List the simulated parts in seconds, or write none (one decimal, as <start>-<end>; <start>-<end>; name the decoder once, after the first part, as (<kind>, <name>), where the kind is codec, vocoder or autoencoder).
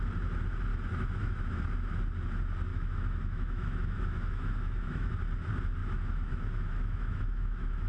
0.7-1.6 (autoencoder, DAC-VAE); 2.7-5.1; 5.8-7.9